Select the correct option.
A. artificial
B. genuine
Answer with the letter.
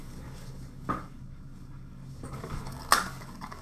A